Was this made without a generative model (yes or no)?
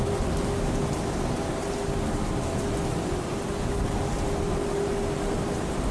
yes